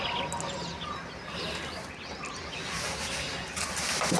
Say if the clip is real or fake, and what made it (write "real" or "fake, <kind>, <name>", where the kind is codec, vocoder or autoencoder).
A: real